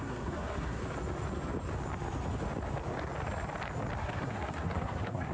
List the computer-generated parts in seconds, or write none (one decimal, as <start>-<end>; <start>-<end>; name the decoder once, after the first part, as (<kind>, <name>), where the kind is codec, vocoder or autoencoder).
0.0-0.8 (codec, SNAC); 4.0-5.3

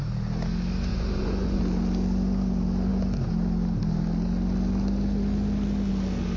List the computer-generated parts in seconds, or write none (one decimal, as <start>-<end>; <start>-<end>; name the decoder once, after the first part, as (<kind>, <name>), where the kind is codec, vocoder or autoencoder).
0.9-1.6 (vocoder, Vocos)

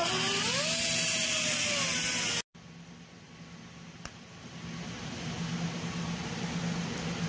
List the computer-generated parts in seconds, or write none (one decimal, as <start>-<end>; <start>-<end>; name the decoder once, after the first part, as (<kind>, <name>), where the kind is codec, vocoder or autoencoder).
none

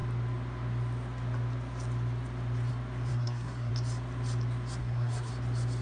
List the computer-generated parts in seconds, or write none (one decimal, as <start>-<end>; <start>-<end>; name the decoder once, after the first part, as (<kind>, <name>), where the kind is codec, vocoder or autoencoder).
3.1-3.7 (codec, SNAC); 4.8-5.3

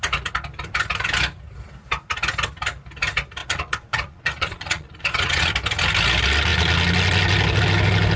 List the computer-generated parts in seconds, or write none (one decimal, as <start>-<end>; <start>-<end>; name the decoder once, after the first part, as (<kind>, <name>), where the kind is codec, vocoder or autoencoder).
3.4-5.5 (vocoder, Vocos)